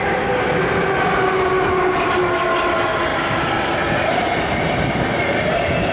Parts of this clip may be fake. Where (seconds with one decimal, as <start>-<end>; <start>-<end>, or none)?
none